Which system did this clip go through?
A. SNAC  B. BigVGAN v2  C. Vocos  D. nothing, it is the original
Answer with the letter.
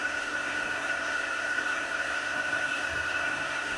A